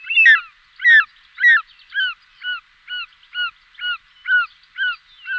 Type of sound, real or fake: real